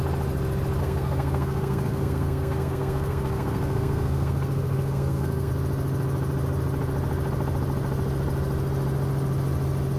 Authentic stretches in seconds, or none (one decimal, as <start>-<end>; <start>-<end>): 0.0-0.8; 5.5-10.0